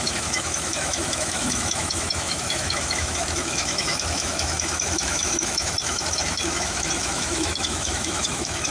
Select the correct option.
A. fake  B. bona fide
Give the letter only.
A